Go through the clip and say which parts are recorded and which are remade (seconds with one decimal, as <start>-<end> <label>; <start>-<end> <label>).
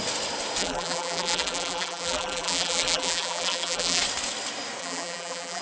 0.0-0.6 recorded; 0.6-4.0 remade; 4.0-4.8 recorded; 4.8-5.6 remade